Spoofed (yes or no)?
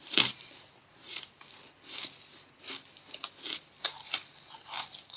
no